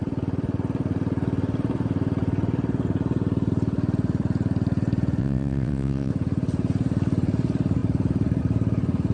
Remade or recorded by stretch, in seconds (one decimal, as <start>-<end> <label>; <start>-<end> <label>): 0.0-5.2 recorded; 5.2-6.1 remade; 6.1-9.1 recorded